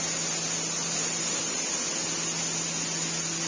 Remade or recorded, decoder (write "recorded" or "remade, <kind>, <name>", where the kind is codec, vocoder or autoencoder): recorded